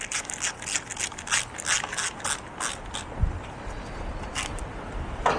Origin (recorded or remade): recorded